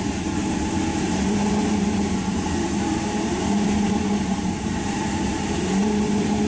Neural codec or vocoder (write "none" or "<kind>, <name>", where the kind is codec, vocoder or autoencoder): vocoder, BigVGAN v2